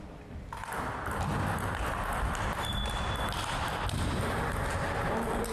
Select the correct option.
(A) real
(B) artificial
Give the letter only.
A